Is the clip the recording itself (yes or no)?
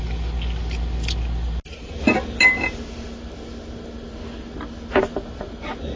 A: yes